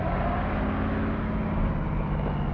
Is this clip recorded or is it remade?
recorded